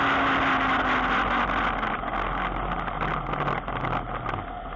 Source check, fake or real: real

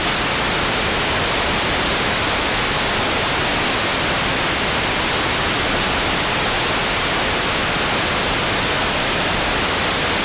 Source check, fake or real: real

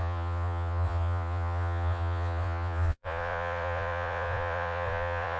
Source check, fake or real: fake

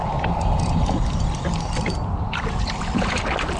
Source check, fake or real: real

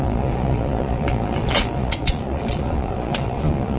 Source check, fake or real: fake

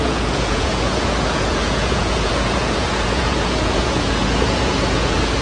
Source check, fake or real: fake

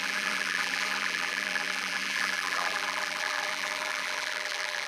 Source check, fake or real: fake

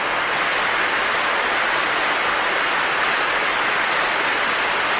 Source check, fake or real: real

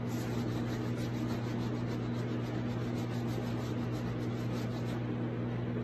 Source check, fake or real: real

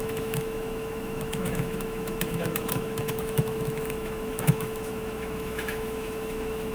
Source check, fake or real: fake